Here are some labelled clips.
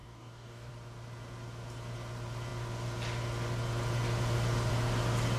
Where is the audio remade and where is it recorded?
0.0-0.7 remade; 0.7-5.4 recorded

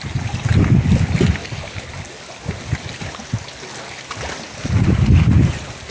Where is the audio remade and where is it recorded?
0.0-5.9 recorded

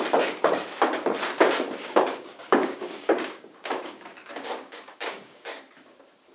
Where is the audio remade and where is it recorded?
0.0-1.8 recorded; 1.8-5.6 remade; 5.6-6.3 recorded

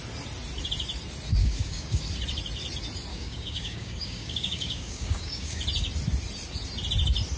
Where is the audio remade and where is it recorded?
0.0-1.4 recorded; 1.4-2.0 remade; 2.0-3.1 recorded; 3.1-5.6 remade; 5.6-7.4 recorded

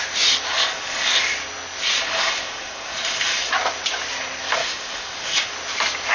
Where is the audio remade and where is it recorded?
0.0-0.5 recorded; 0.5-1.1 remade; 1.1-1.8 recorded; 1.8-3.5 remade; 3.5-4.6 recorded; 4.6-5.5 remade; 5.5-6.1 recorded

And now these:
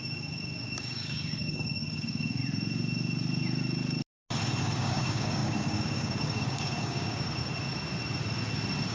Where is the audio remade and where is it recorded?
0.0-2.4 remade; 2.4-4.6 recorded; 4.6-7.4 remade; 7.4-8.9 recorded

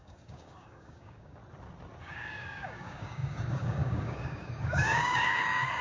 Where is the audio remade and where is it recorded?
0.0-1.4 remade; 1.4-2.0 recorded; 2.0-5.8 remade